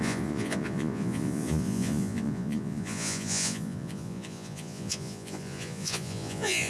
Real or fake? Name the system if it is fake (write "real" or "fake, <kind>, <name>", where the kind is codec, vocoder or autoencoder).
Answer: fake, vocoder, Vocos